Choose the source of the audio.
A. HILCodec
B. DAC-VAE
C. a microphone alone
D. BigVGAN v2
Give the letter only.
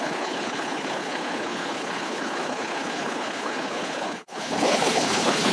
A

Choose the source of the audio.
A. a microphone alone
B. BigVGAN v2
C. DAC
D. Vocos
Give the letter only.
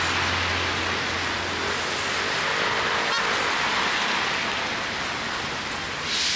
A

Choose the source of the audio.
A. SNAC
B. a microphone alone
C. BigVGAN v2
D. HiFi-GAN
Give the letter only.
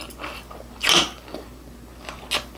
B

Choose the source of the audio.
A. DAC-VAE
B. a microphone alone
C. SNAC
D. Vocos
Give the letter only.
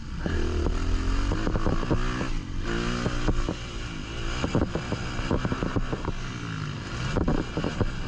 B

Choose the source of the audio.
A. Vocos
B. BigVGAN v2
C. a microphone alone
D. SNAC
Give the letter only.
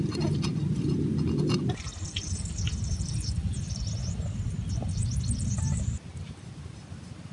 C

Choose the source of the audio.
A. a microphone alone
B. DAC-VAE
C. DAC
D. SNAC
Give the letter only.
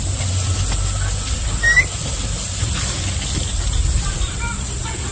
A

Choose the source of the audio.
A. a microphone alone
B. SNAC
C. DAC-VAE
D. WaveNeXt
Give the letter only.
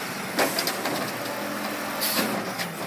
A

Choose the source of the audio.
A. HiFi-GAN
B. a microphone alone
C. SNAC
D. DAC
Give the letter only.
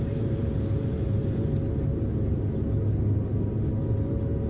B